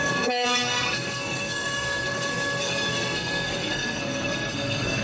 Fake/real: fake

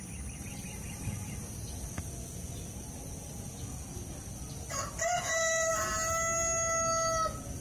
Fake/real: real